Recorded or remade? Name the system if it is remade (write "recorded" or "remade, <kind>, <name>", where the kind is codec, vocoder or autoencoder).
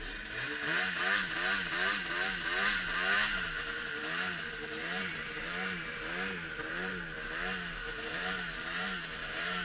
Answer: remade, vocoder, BigVGAN v2